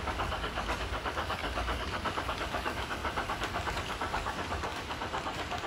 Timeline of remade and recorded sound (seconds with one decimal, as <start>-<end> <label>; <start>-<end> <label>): 0.0-3.0 remade; 3.0-3.7 recorded; 3.7-4.7 remade; 4.7-5.7 recorded